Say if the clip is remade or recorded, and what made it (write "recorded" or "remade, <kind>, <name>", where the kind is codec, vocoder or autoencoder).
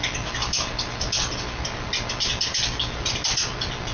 recorded